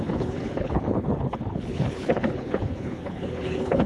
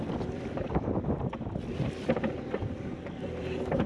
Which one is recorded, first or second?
second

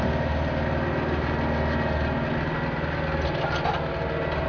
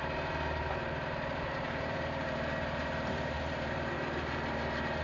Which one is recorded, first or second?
first